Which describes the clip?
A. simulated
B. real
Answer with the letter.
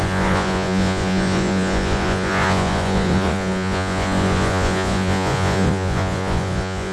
A